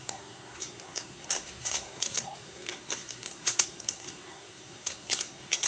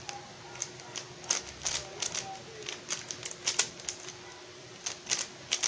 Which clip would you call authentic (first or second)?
second